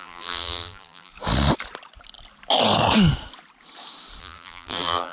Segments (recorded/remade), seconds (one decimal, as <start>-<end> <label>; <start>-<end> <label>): 0.0-1.1 remade; 1.1-4.2 recorded; 4.2-5.1 remade